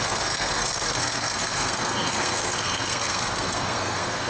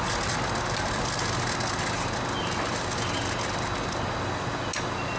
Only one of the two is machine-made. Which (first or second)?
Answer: first